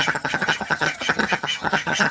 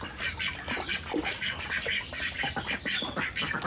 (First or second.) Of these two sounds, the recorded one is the second